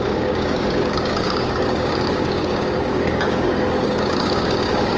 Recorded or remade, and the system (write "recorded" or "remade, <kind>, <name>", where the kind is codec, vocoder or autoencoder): remade, codec, DAC